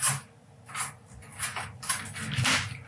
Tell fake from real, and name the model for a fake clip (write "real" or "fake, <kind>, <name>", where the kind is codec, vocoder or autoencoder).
real